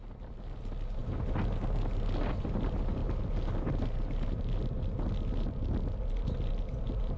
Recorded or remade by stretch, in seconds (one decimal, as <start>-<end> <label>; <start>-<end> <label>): 0.0-1.0 remade; 1.0-2.2 recorded; 2.2-3.0 remade; 3.0-6.5 recorded; 6.5-7.2 remade